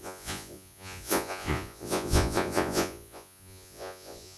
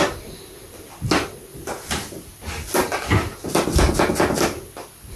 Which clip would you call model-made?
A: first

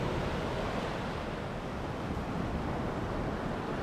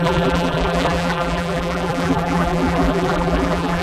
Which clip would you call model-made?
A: second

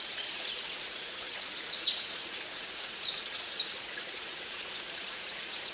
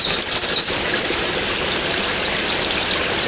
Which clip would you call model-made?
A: first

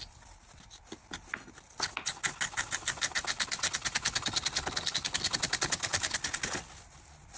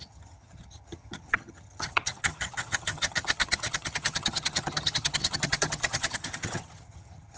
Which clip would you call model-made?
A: second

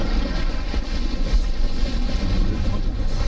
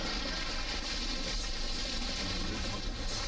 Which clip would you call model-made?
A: first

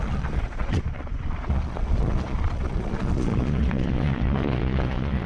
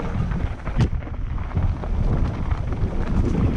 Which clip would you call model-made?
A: first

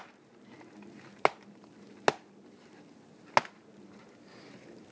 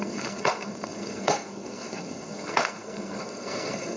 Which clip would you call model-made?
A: second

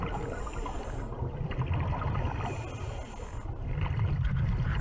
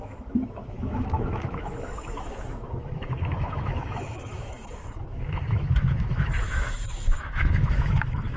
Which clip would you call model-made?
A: second